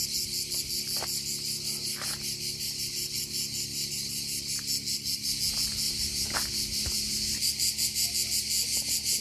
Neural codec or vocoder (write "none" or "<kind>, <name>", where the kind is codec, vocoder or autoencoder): none